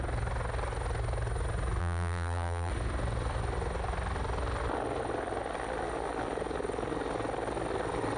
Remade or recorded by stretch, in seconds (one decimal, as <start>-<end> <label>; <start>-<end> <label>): 0.0-1.8 recorded; 1.8-2.7 remade; 2.7-8.2 recorded